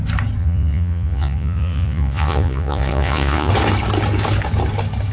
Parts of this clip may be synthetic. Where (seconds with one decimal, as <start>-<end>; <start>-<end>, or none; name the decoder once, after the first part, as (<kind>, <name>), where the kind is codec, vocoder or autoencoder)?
0.4-3.5 (vocoder, Vocos)